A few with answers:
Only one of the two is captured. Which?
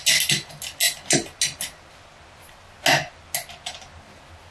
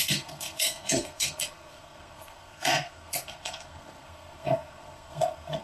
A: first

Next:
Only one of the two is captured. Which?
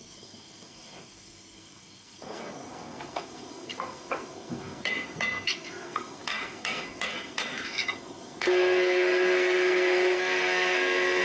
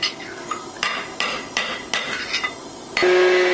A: second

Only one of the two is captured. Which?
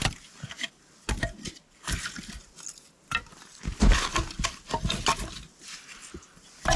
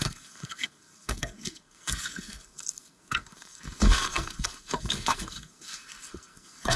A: first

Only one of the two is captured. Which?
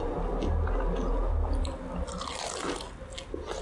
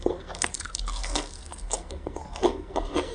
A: first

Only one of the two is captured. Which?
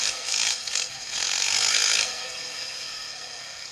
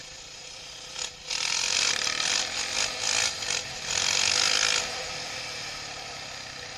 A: second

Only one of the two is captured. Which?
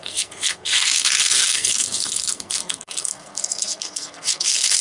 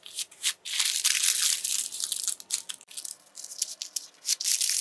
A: second